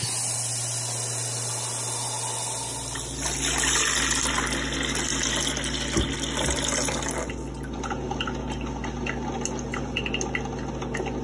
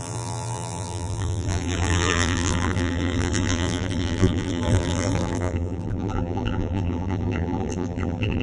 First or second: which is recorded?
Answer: first